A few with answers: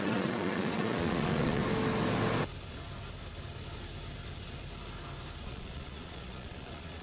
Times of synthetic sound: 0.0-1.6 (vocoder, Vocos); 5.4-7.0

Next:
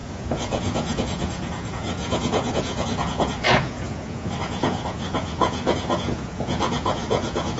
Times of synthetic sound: 0.0-7.6 (vocoder, Vocos)

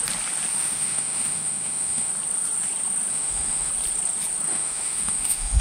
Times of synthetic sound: 0.5-2.1 (autoencoder, DAC-VAE); 3.1-3.7; 4.5-5.6

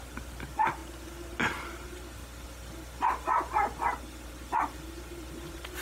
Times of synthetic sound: 0.0-0.8 (vocoder, BigVGAN v2); 4.3-5.8

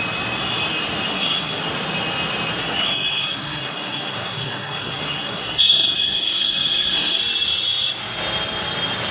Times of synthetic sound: 1.1-1.6 (codec, SNAC); 2.6-7.2

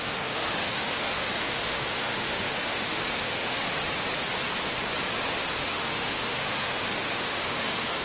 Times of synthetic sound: 0.0-3.6 (autoencoder, DAC-VAE); 5.5-8.0

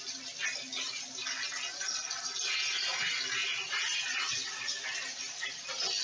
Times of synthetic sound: none

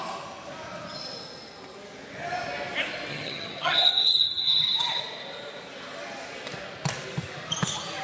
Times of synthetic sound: 3.1-5.0 (vocoder, HiFi-GAN)